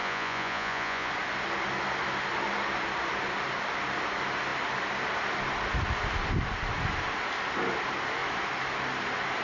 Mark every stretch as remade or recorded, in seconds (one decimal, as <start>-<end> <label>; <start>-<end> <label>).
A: 0.0-1.1 remade; 1.1-9.4 recorded